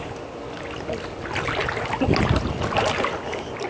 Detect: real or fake real